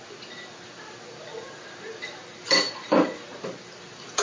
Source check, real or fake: fake